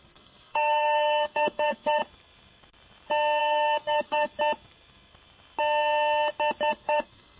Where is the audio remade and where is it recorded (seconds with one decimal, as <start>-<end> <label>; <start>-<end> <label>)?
0.0-2.0 remade; 2.0-3.4 recorded; 3.4-4.3 remade; 4.3-6.7 recorded; 6.7-7.4 remade